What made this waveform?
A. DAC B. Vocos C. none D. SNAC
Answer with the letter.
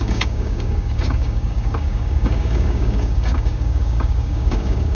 A